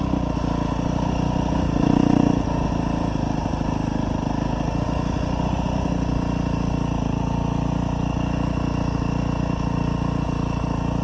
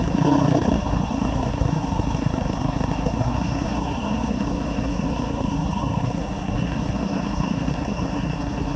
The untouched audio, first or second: first